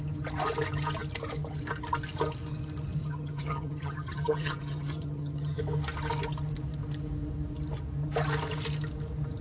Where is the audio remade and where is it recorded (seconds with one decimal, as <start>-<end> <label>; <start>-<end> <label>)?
0.0-3.0 recorded; 3.0-5.6 remade; 5.6-9.4 recorded